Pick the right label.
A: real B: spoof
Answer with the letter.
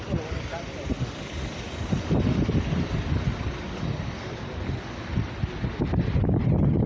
A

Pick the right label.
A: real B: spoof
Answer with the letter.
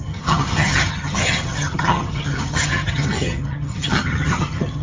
B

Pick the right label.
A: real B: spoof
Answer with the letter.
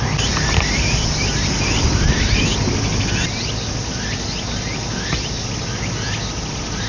A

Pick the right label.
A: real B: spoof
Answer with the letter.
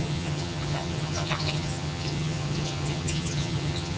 B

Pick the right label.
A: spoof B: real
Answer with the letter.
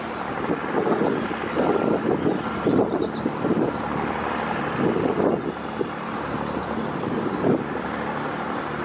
B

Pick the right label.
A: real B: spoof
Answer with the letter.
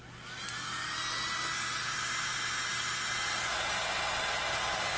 A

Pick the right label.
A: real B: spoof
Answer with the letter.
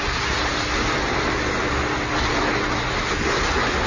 A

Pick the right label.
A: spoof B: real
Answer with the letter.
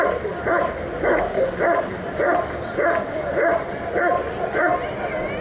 B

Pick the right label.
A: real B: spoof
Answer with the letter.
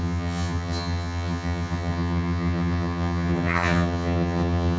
B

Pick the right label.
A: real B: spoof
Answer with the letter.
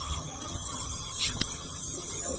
B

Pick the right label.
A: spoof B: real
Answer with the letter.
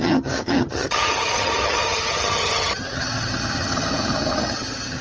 A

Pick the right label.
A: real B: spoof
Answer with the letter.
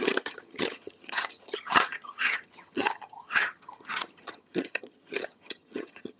B